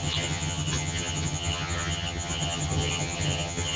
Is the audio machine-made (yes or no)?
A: yes